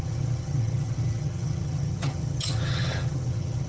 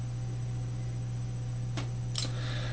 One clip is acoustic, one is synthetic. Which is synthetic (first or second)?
first